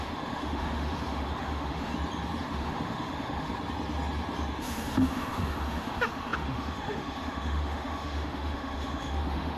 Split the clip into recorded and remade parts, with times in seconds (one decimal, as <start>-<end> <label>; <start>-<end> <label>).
0.0-1.9 remade; 1.9-2.4 recorded; 2.4-3.5 remade; 3.5-4.6 recorded; 4.6-9.6 remade